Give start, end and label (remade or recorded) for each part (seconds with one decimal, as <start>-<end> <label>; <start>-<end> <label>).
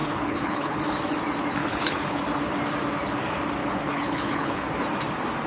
0.0-0.8 remade; 0.8-1.6 recorded; 1.6-2.2 remade; 2.2-3.6 recorded; 3.6-4.7 remade; 4.7-5.5 recorded